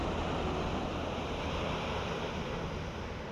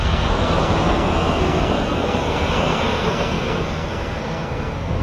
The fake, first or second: second